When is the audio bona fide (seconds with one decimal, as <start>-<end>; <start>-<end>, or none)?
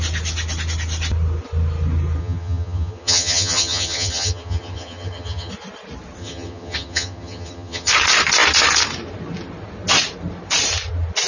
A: 0.0-2.2; 5.5-6.2; 7.9-11.3